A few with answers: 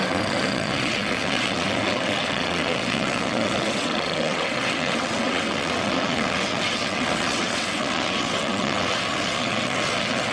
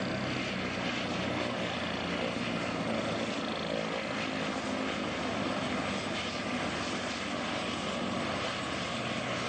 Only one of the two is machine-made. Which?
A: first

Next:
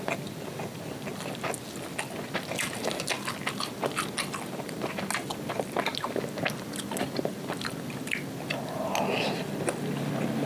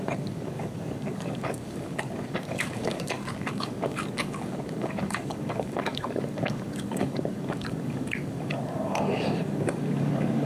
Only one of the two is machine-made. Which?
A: second